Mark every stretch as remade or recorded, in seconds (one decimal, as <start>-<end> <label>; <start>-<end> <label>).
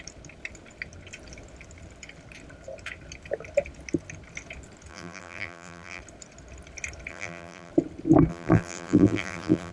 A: 0.0-4.9 recorded; 4.9-6.0 remade; 6.0-7.1 recorded; 7.1-7.7 remade; 7.7-8.3 recorded; 8.3-9.7 remade